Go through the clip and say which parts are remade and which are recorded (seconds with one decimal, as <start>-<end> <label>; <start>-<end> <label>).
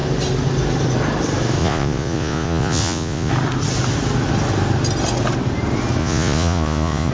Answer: 0.0-1.6 recorded; 1.6-3.3 remade; 3.3-6.0 recorded; 6.0-7.1 remade